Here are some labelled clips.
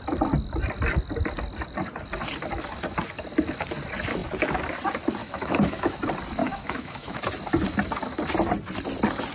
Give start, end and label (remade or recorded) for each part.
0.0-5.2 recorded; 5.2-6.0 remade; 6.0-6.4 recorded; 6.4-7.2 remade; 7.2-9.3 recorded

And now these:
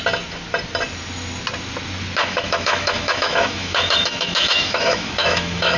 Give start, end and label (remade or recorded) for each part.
0.0-2.2 recorded; 2.2-5.8 remade